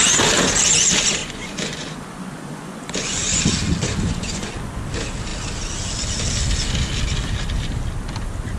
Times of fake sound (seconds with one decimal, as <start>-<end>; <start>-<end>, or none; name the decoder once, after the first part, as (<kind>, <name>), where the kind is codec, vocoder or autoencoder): 1.2-3.4 (vocoder, Vocos); 3.9-4.8